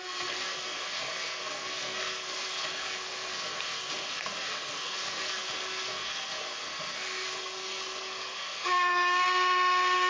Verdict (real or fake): fake